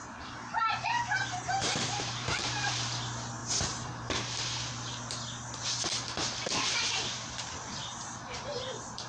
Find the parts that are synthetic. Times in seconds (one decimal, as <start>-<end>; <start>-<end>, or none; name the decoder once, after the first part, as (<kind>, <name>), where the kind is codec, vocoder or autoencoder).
0.0-2.7 (vocoder, BigVGAN v2); 3.4-4.7